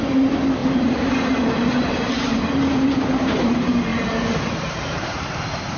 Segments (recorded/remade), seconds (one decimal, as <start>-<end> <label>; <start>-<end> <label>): 0.0-5.8 remade